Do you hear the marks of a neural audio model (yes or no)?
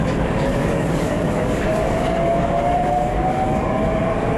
yes